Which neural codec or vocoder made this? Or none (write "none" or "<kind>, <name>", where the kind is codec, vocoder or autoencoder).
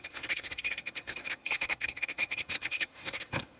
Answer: codec, SNAC